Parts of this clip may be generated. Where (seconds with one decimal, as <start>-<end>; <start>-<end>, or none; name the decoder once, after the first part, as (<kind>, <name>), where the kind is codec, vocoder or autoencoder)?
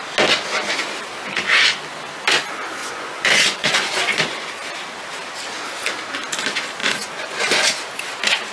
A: 2.8-4.5 (vocoder, Vocos); 6.8-7.7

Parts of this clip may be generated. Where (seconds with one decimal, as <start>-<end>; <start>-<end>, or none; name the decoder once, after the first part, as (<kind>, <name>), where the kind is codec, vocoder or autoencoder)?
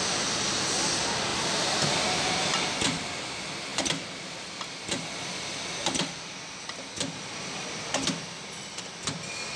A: 1.3-2.1 (vocoder, BigVGAN v2)